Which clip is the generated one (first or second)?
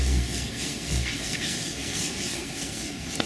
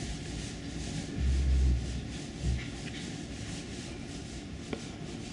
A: first